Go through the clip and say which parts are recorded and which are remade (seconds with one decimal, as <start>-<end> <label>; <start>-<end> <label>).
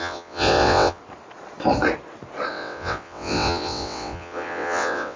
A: 0.0-1.0 remade; 1.0-2.5 recorded; 2.5-5.2 remade